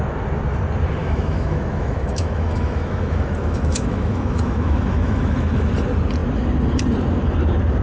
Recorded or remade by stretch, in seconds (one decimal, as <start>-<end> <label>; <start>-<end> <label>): 0.0-1.0 recorded; 1.0-5.7 remade; 5.7-7.8 recorded